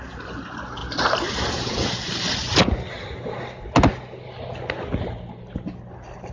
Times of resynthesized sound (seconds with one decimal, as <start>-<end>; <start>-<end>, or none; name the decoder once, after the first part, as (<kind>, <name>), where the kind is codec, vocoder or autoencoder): none

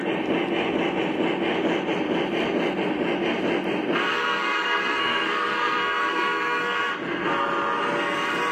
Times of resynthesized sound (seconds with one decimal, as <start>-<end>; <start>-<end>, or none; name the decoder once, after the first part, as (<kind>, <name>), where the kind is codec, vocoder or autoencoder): 4.1-6.9 (codec, SNAC)

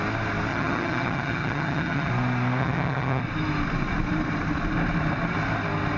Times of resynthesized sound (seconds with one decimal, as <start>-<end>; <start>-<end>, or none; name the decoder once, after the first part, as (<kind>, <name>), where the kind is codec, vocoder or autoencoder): 0.5-2.1 (vocoder, HiFi-GAN); 2.6-3.2